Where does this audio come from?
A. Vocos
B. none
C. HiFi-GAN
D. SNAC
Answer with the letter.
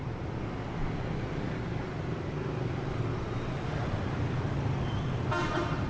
B